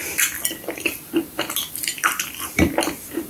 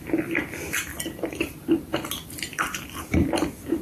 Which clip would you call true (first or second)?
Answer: first